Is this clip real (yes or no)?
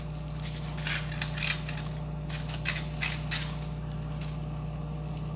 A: yes